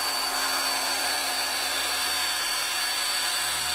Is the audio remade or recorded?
remade